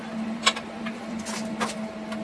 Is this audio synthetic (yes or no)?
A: no